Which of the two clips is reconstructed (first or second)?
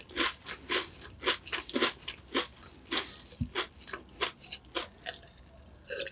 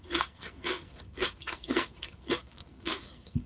second